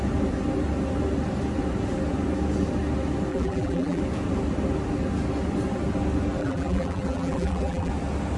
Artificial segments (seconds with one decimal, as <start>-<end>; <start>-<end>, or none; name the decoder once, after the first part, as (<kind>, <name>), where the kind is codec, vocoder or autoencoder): 3.3-4.0 (vocoder, BigVGAN v2); 6.4-7.9